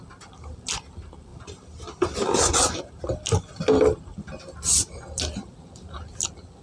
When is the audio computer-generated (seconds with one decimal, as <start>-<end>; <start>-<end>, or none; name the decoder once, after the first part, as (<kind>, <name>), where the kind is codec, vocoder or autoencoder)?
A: none